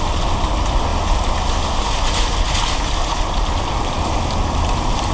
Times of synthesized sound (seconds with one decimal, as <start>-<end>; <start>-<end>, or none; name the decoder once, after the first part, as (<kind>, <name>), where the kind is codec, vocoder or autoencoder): none